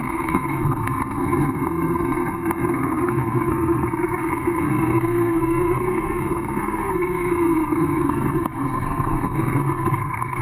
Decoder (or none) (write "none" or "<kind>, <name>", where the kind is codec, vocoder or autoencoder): codec, SNAC